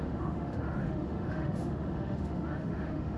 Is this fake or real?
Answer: fake